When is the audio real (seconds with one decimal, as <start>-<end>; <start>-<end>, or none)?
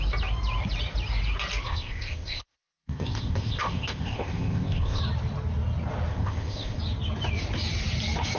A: 0.0-1.6; 5.0-6.1; 6.8-8.4